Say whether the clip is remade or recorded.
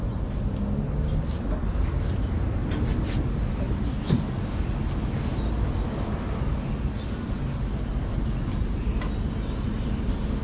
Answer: recorded